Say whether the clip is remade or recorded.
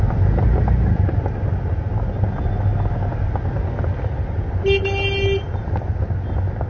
recorded